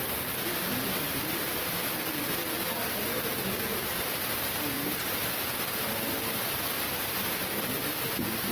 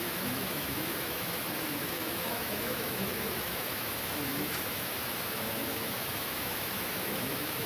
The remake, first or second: second